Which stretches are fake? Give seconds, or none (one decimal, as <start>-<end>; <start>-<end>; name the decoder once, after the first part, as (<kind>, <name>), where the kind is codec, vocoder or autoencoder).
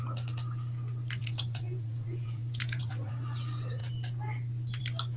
1.2-3.1 (vocoder, Vocos)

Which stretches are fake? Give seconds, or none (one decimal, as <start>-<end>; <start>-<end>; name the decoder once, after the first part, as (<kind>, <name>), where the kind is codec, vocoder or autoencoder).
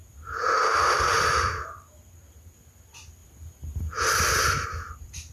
2.3-3.2 (vocoder, BigVGAN v2); 4.2-5.3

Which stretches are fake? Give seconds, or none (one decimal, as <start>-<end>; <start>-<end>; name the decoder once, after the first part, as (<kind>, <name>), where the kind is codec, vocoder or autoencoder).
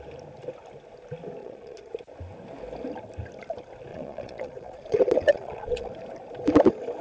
1.4-1.9 (vocoder, Vocos); 3.9-5.9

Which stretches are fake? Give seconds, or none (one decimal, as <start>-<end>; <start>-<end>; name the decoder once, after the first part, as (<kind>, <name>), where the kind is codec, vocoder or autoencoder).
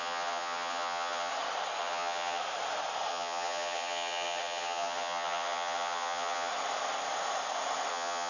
0.0-1.3 (vocoder, HiFi-GAN); 1.8-2.4; 3.1-6.5; 7.9-8.3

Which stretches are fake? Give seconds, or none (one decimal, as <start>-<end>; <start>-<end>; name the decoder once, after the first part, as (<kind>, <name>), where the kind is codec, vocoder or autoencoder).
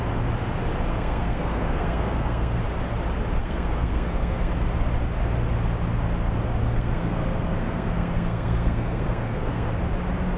0.9-2.6 (codec, SNAC); 3.4-4.5; 6.6-9.7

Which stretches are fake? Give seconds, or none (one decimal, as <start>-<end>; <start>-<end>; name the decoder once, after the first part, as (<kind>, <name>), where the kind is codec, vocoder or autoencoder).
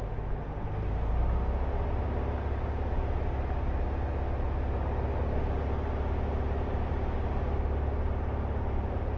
0.4-1.1 (autoencoder, DAC-VAE)